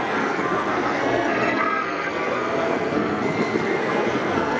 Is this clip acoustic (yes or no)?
no